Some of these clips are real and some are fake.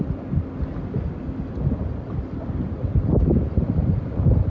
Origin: real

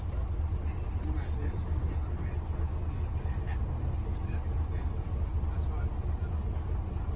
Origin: real